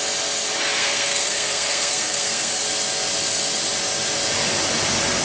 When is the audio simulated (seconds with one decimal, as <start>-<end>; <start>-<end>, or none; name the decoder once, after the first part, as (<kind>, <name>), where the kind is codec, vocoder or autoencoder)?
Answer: 0.8-2.6 (codec, SNAC)

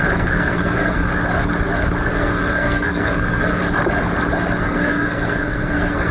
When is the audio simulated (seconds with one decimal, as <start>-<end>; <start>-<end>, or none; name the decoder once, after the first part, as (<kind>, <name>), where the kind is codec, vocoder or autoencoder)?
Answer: 0.0-1.1 (codec, SNAC); 2.1-3.6; 4.6-6.1

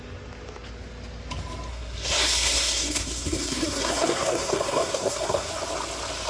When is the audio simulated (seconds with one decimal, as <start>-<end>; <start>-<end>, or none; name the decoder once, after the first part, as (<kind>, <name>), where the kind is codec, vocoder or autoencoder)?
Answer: 1.7-5.5 (codec, SNAC)

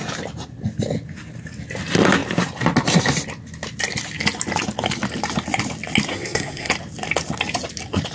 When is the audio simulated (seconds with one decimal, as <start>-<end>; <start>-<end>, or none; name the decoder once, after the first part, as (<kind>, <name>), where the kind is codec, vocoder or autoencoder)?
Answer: 6.1-6.7 (codec, SNAC)